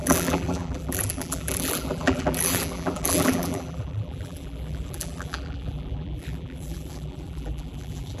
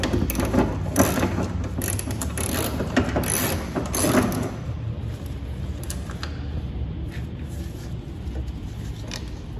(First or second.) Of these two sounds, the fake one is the first